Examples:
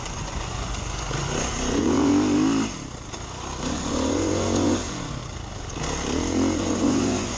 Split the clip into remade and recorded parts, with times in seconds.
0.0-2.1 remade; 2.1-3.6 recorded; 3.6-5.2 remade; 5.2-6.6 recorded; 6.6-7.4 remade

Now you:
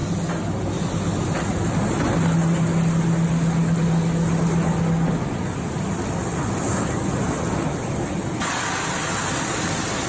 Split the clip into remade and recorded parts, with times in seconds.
0.0-10.1 recorded